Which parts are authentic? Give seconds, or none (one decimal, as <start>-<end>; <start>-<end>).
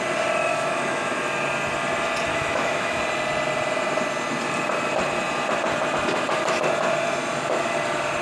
0.0-0.5; 1.2-2.3; 3.0-8.2